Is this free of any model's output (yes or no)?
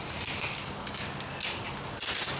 yes